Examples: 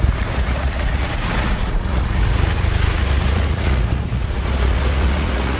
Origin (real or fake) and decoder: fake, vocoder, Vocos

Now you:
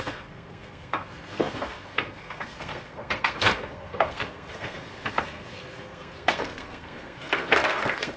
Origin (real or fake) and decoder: fake, codec, SNAC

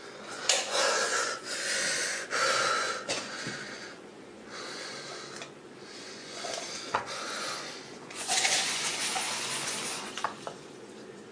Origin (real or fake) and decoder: fake, vocoder, Vocos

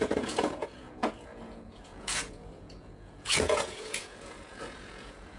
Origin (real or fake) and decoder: fake, vocoder, Vocos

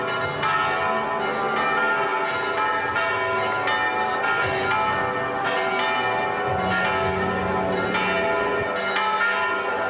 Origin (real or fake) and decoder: real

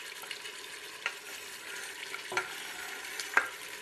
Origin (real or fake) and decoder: real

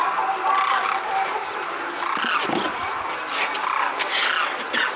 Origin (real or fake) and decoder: real